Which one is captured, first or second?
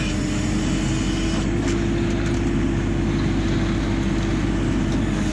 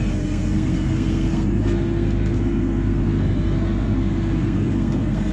first